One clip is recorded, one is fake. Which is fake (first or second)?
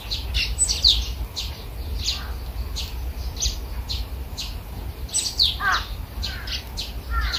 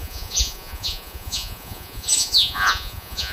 second